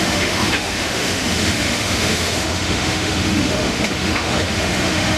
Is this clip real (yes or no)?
no